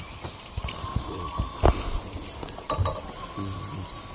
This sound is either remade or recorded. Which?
recorded